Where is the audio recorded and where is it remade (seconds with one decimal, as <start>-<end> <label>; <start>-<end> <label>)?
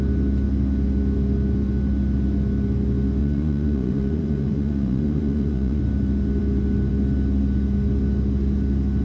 0.0-3.2 recorded; 3.2-5.8 remade; 5.8-9.0 recorded